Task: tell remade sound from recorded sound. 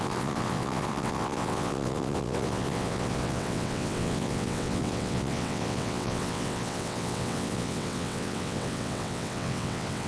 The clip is remade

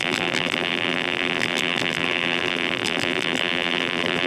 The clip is remade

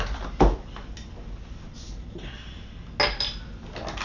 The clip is recorded